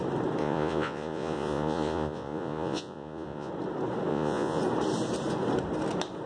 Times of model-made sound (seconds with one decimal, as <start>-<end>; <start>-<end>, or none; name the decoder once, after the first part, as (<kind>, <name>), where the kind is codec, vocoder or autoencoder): 0.4-3.5 (vocoder, Vocos); 4.1-4.6